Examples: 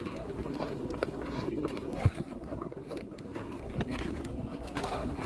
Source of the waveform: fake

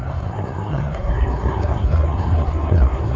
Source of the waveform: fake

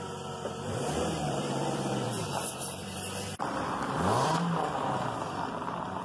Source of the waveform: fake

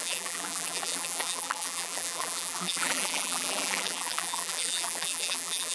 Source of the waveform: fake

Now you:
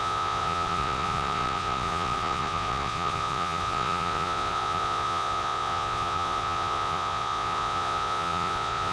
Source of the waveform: fake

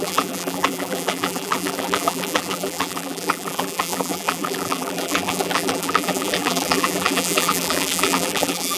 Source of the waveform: fake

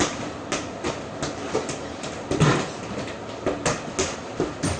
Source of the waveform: real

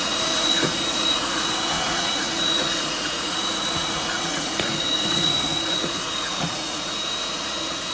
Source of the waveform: fake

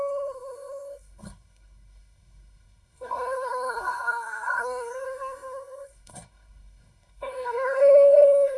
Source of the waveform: fake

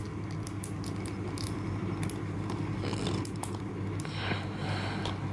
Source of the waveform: real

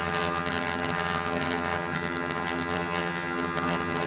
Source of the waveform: fake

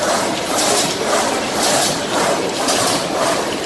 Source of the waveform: fake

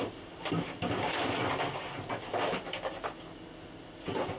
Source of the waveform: real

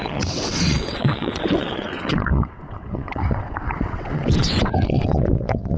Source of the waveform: fake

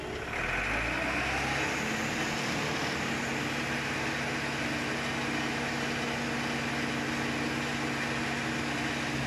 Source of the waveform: real